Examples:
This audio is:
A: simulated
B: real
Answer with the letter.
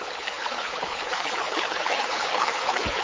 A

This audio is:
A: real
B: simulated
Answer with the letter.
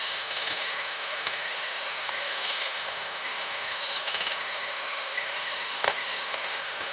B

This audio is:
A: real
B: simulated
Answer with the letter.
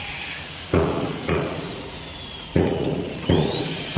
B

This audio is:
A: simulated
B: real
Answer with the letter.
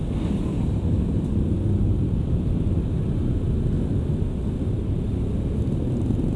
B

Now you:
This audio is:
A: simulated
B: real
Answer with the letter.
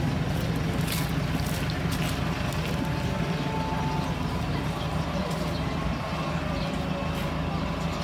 B